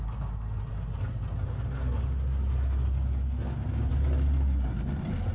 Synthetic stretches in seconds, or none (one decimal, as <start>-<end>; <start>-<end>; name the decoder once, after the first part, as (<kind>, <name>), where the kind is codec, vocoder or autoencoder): none